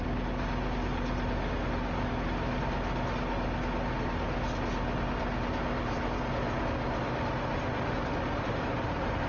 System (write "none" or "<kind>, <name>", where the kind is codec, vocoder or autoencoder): none